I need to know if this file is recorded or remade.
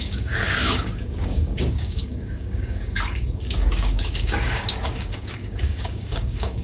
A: remade